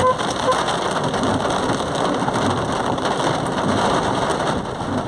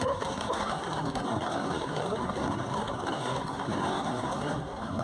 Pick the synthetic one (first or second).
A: second